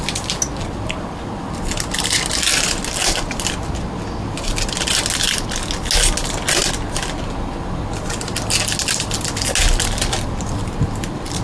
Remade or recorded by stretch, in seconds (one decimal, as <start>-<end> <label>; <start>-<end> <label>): 0.0-11.4 recorded